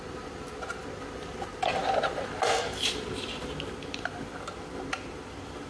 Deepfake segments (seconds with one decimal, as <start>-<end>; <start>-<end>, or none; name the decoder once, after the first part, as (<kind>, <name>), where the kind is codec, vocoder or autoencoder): none